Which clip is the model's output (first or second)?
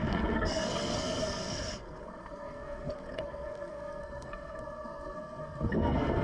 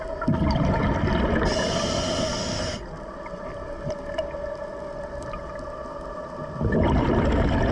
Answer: first